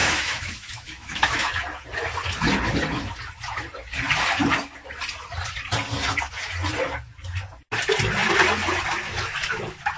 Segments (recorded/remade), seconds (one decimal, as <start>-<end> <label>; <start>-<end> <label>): 0.0-1.6 remade; 1.6-10.0 recorded